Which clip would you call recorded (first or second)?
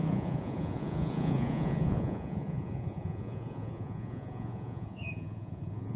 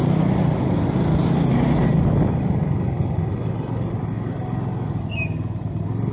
second